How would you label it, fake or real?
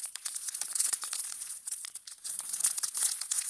fake